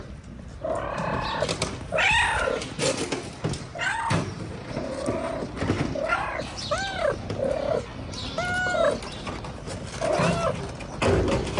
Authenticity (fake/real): real